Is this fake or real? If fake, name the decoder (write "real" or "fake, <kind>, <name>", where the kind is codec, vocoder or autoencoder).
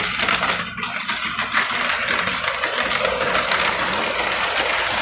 real